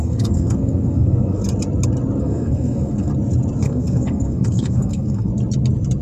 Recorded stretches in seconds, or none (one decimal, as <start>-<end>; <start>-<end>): 1.4-2.2; 3.1-3.6; 5.3-6.0